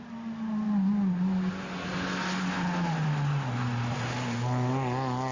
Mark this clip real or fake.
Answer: real